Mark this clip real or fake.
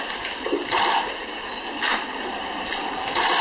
real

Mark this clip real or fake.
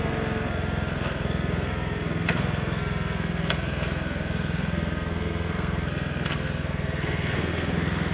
fake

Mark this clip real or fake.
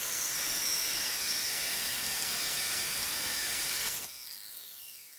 fake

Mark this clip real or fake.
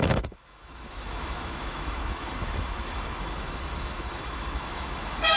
fake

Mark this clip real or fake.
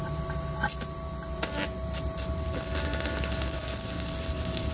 real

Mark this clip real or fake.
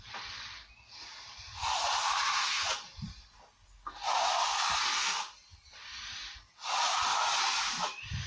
real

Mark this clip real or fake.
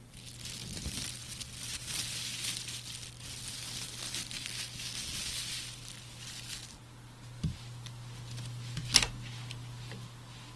real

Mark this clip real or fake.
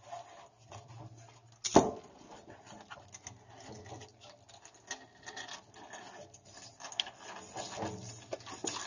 real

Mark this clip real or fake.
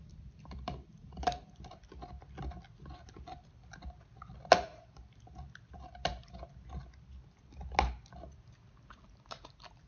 real